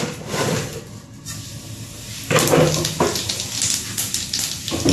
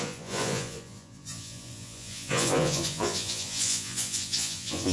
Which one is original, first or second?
first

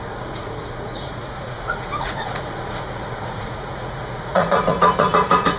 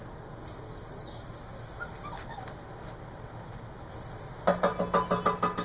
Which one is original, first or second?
second